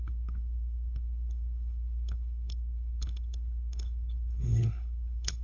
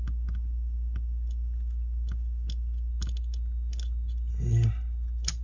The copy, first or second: first